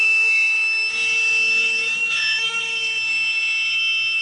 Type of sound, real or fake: fake